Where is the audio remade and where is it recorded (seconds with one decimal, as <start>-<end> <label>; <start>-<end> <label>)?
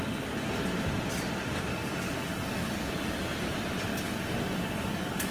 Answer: 0.0-1.7 recorded; 1.7-2.9 remade; 2.9-3.9 recorded; 3.9-5.3 remade